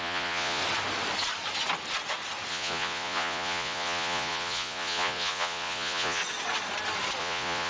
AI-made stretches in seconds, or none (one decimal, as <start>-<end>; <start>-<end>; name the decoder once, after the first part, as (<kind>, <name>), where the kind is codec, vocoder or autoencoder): 0.0-0.6 (vocoder, Vocos); 2.5-6.2; 7.2-7.7